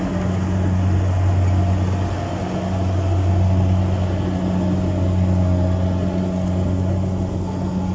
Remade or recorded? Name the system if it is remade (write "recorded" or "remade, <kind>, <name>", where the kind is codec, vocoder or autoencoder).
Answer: recorded